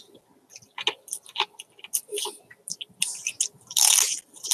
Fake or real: real